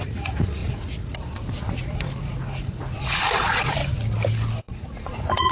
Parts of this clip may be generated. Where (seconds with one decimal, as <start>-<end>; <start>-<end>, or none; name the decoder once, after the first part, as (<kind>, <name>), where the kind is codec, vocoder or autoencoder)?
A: 0.0-3.8 (vocoder, Vocos); 4.6-5.5